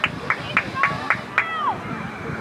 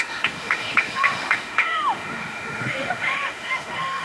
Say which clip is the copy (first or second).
second